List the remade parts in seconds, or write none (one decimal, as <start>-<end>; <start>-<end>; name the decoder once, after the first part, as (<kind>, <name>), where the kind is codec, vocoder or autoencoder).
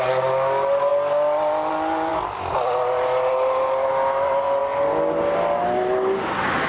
none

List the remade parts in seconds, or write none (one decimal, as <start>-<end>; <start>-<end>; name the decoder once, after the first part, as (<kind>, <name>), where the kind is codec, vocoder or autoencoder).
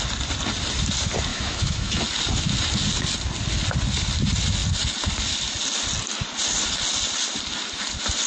1.3-2.0 (autoencoder, DAC-VAE)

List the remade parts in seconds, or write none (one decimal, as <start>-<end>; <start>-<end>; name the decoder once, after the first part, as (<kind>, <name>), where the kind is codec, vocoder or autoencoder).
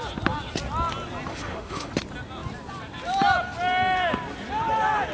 1.3-1.9 (autoencoder, DAC-VAE)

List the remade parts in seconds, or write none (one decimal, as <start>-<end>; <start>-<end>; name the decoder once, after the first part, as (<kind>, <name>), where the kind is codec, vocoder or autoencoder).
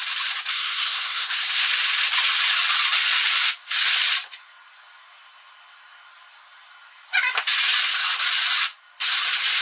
0.5-1.7 (codec, SNAC)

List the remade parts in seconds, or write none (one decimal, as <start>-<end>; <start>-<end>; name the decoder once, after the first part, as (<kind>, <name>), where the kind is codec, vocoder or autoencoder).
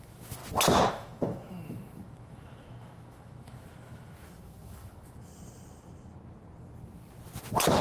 0.0-0.4 (autoencoder, DAC-VAE); 0.9-5.3